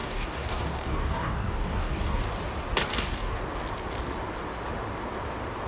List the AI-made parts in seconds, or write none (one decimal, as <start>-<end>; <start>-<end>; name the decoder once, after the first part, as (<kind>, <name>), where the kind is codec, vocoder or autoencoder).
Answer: 0.0-2.2 (codec, DAC); 2.9-3.4